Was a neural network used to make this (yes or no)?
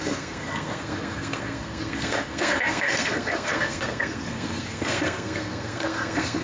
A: yes